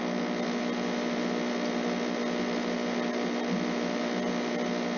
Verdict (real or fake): real